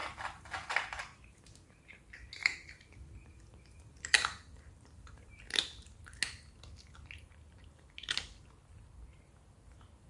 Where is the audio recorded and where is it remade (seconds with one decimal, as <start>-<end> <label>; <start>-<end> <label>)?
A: 0.0-1.0 remade; 1.0-2.4 recorded; 2.4-5.4 remade; 5.4-10.1 recorded